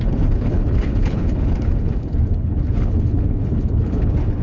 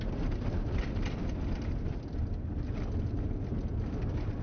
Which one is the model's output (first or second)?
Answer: first